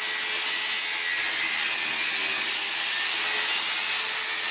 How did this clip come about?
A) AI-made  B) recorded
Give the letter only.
B